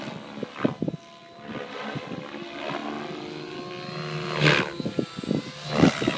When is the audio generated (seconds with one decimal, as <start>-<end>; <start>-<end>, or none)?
none